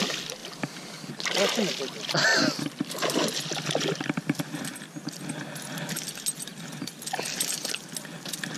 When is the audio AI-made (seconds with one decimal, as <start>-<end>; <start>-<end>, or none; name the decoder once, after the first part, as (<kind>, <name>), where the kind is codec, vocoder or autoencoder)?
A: none

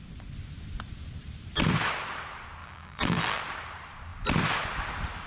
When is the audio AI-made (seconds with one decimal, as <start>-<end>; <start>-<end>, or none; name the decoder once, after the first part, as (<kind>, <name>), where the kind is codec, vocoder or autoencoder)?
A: 2.6-3.4 (vocoder, BigVGAN v2)

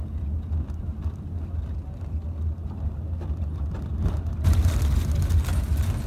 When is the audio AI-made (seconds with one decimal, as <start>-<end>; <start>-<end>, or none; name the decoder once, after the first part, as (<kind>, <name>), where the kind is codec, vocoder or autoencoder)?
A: none

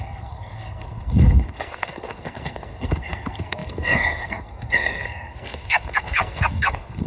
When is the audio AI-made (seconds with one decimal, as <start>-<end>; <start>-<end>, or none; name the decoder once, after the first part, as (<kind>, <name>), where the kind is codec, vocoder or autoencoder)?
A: 0.0-7.1 (codec, SNAC)